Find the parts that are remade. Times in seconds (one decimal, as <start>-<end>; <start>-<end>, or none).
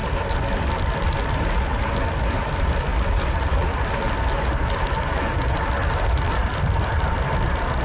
none